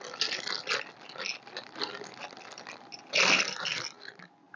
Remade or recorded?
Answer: recorded